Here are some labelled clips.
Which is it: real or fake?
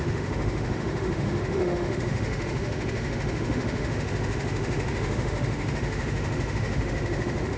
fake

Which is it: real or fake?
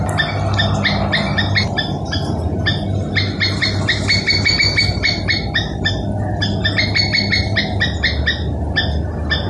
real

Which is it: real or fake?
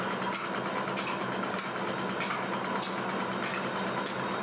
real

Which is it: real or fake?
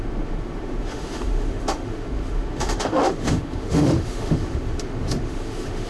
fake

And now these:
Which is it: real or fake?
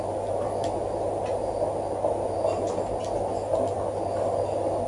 real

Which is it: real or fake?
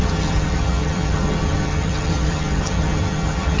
fake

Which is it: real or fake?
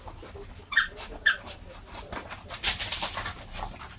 fake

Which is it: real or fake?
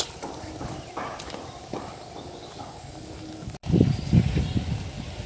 real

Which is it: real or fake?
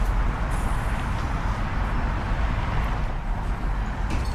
real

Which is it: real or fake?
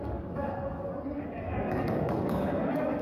fake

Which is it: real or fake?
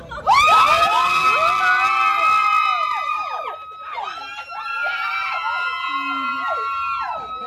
real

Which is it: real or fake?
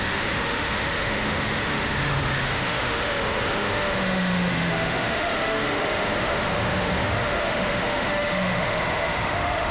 fake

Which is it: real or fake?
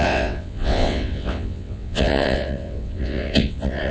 fake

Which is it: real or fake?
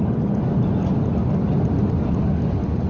real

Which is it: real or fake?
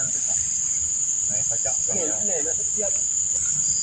real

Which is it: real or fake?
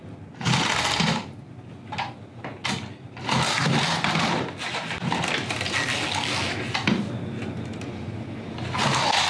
real